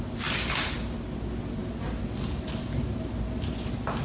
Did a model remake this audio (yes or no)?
no